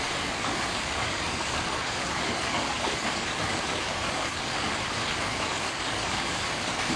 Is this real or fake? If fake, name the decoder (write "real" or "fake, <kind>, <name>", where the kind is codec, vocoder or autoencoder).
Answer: fake, codec, DAC